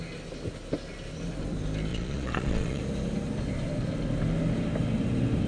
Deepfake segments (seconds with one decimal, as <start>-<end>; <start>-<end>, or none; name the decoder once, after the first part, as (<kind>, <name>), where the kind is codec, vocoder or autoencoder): 1.9-2.8 (vocoder, Vocos)